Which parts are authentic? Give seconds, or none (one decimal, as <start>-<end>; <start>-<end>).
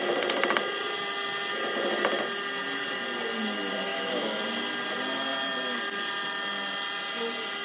0.0-3.9; 4.4-7.6